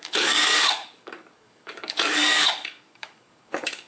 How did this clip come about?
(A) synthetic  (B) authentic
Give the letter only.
A